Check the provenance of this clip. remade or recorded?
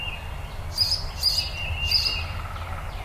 recorded